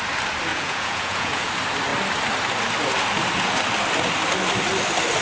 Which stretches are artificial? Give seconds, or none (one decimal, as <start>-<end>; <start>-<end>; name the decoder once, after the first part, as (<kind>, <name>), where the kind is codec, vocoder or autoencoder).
0.5-1.5 (vocoder, Vocos)

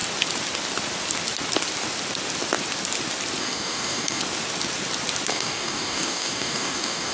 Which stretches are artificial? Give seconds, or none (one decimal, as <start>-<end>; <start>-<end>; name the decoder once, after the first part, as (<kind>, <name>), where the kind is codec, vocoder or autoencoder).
3.4-4.2 (codec, DAC); 5.3-7.1

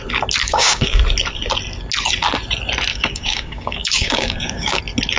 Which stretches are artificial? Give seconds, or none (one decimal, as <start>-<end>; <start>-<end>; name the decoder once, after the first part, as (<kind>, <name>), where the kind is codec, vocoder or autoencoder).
0.4-1.0 (codec, DAC); 2.9-4.8

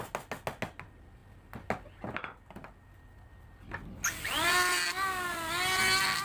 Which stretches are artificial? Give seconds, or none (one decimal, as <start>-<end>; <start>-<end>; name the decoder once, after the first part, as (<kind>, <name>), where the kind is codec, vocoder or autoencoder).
none

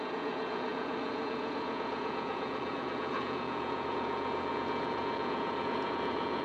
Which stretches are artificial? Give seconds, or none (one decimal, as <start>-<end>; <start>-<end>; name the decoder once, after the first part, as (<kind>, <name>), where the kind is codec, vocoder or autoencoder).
0.0-6.4 (vocoder, Vocos)

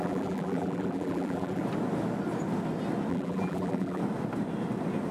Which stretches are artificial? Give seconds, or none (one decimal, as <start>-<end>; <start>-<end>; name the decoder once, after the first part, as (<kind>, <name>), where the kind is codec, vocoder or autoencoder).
0.0-1.6 (vocoder, BigVGAN v2); 3.1-4.0

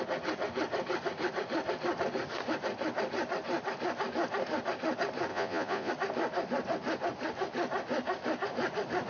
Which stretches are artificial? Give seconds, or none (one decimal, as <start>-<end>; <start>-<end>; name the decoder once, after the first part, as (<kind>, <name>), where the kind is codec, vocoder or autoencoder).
5.3-5.9 (vocoder, Vocos)

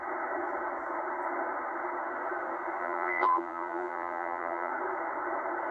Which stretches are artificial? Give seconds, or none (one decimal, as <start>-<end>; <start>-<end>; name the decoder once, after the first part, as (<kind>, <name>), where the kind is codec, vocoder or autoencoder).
2.8-4.7 (vocoder, BigVGAN v2)